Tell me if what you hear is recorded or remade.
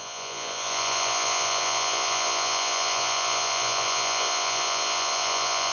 remade